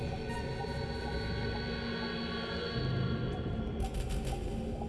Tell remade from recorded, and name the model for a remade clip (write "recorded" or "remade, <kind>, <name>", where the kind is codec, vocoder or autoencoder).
recorded